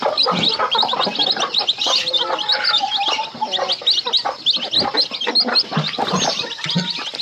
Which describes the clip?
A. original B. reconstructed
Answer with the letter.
A